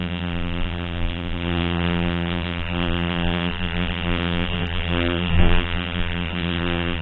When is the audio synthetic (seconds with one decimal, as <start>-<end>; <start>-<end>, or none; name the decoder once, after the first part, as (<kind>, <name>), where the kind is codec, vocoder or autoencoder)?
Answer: 0.0-7.0 (vocoder, BigVGAN v2)